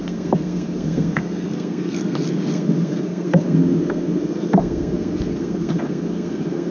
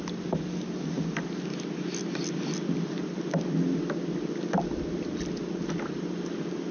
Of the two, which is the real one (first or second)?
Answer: second